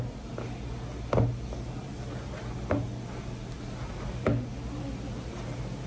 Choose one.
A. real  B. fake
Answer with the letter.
A